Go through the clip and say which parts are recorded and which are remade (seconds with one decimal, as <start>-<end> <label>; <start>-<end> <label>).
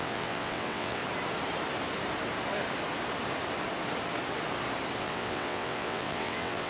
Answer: 0.0-1.0 remade; 1.0-5.0 recorded; 5.0-6.7 remade